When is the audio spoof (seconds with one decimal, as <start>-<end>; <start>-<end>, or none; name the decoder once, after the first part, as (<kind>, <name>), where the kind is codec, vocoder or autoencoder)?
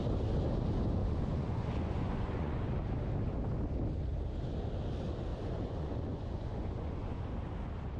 1.0-2.7 (vocoder, Vocos); 5.3-7.2